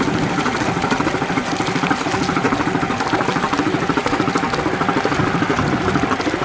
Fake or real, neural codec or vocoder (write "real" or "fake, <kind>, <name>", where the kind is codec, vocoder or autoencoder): real